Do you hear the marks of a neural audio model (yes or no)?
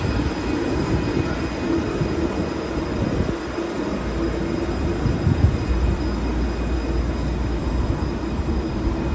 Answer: no